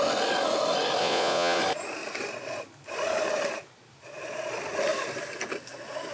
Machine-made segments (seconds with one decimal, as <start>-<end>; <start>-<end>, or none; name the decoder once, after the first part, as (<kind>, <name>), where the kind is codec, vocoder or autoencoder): 1.0-1.6 (vocoder, Vocos)